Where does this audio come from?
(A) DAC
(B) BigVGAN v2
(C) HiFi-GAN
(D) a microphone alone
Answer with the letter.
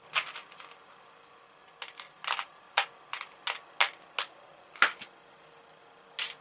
D